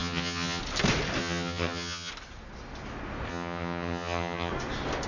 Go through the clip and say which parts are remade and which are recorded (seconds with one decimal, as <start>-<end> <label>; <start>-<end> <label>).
0.0-0.6 remade; 0.6-1.2 recorded; 1.2-2.1 remade; 2.1-3.3 recorded; 3.3-4.5 remade; 4.5-5.1 recorded